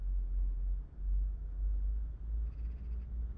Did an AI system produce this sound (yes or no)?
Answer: no